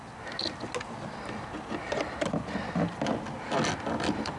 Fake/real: real